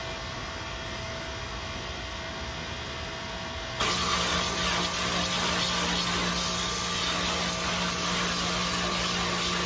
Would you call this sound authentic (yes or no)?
yes